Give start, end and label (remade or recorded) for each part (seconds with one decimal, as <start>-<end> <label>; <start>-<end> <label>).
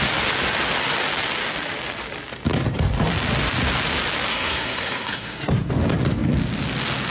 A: 0.0-4.3 recorded; 4.3-5.7 remade; 5.7-7.1 recorded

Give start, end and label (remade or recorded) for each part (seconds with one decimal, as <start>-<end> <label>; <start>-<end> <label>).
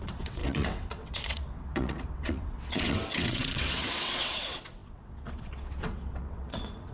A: 0.0-6.9 remade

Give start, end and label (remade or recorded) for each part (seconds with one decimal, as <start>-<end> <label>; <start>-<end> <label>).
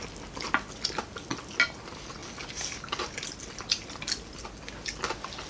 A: 0.0-5.5 recorded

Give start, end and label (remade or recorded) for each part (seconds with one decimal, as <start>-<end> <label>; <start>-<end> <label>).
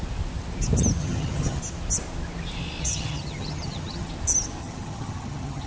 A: 0.0-1.0 recorded; 1.0-1.6 remade; 1.6-2.8 recorded; 2.8-4.1 remade; 4.1-4.6 recorded; 4.6-5.7 remade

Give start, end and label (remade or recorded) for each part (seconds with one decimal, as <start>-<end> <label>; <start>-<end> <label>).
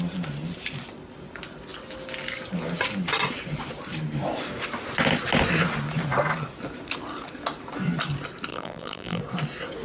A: 0.0-8.5 recorded; 8.5-9.2 remade; 9.2-9.8 recorded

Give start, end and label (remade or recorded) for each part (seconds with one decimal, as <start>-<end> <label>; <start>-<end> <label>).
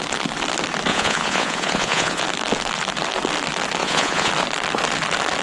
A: 0.0-0.9 recorded; 0.9-2.2 remade; 2.2-3.8 recorded; 3.8-4.3 remade; 4.3-5.4 recorded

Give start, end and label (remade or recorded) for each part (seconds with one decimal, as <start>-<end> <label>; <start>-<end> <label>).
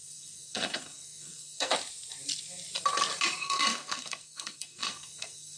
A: 0.0-1.7 remade; 1.7-3.4 recorded; 3.4-5.6 remade